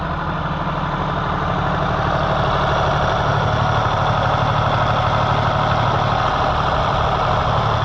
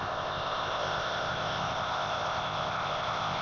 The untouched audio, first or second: first